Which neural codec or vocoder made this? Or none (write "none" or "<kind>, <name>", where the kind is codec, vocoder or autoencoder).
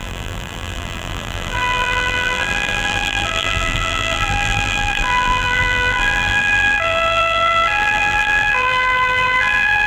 vocoder, BigVGAN v2